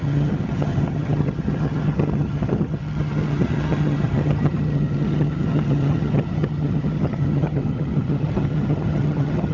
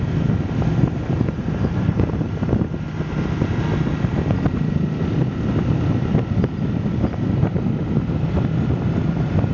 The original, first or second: second